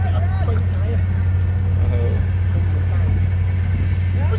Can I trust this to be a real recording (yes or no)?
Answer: yes